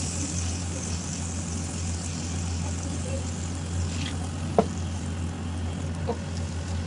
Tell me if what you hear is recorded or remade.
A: recorded